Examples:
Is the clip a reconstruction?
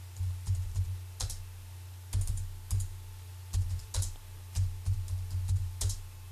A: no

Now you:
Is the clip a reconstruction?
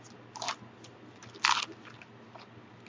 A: no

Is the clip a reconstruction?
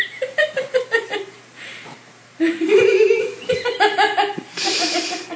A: yes